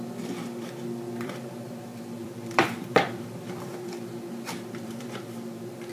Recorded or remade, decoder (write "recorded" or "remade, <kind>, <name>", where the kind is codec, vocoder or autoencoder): remade, vocoder, BigVGAN v2